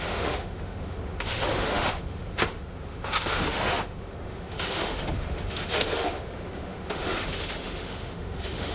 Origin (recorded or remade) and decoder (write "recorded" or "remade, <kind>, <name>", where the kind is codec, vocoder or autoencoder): remade, autoencoder, DAC-VAE